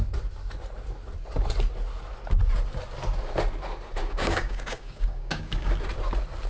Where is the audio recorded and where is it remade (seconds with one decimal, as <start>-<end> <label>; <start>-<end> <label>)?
0.0-4.0 recorded; 4.0-5.7 remade; 5.7-6.5 recorded